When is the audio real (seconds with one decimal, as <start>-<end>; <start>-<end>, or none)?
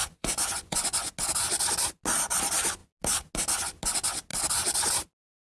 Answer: 1.1-5.6